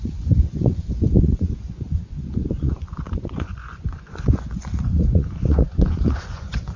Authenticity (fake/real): fake